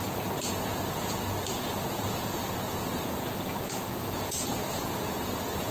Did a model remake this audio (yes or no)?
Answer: yes